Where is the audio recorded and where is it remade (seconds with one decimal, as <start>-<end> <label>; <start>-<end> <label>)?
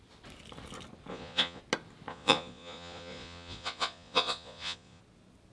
0.0-1.1 recorded; 1.1-1.6 remade; 1.6-2.1 recorded; 2.1-5.0 remade; 5.0-5.5 recorded